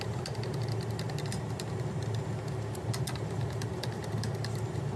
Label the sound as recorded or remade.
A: recorded